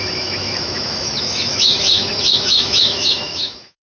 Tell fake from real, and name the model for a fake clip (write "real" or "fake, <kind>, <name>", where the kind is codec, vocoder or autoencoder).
fake, autoencoder, DAC-VAE